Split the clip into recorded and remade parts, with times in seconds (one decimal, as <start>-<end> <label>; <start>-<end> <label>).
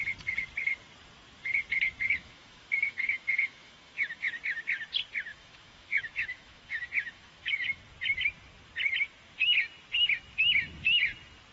0.0-2.2 recorded; 2.2-4.3 remade; 4.3-5.3 recorded; 5.3-7.8 remade; 7.8-11.5 recorded